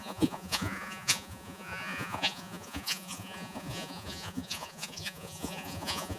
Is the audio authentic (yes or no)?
no